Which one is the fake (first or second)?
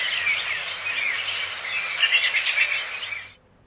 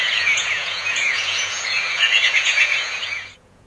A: second